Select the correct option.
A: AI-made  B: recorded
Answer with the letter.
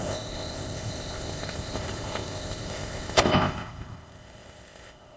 A